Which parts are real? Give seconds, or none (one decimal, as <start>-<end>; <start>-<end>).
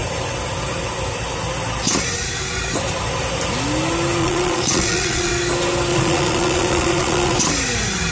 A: 0.0-4.2; 5.3-5.9; 7.4-8.1